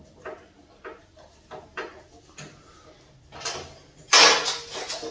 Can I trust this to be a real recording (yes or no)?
yes